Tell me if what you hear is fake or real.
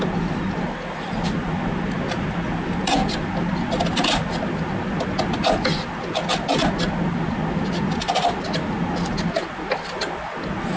real